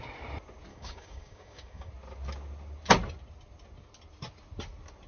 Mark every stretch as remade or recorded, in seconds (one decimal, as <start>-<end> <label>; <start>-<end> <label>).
0.0-0.7 recorded; 0.7-1.9 remade; 1.9-5.1 recorded